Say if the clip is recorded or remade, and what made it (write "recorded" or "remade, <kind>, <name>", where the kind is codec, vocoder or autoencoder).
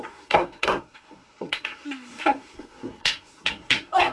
remade, codec, SNAC